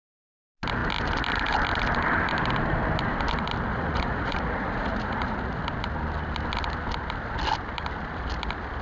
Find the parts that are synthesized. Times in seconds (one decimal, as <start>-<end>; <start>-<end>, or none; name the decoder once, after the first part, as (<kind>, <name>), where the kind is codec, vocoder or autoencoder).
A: 3.7-5.6 (vocoder, Vocos)